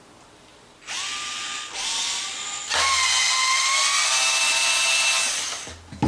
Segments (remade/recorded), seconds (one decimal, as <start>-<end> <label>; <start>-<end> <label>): 0.0-6.1 recorded